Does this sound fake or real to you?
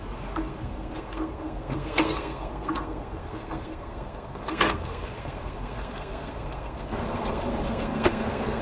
fake